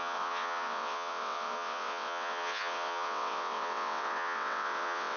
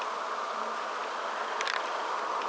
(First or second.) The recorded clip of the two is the second